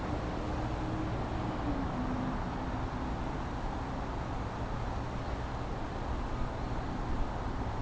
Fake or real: real